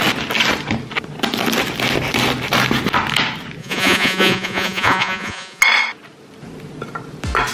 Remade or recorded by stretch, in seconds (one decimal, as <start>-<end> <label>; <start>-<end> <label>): 0.0-3.6 recorded; 3.6-5.6 remade; 5.6-7.5 recorded